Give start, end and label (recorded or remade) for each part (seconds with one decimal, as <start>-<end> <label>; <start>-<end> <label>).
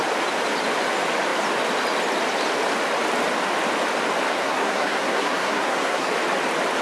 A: 0.0-4.3 recorded; 4.3-6.1 remade; 6.1-6.8 recorded